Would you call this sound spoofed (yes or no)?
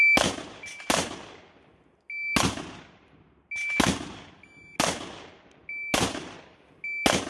no